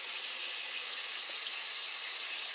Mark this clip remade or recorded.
recorded